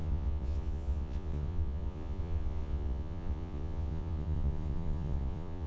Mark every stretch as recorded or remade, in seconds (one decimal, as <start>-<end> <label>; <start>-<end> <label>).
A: 0.0-5.7 remade